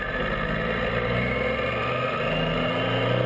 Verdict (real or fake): real